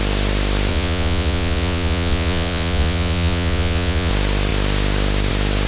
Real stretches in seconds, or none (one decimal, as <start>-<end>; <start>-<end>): 0.0-0.7; 4.1-5.7